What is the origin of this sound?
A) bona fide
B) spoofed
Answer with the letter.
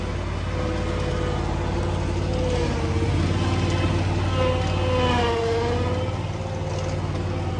A